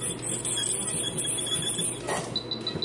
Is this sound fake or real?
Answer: real